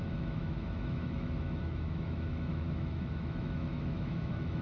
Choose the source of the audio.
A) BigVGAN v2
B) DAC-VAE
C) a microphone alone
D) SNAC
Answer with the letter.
B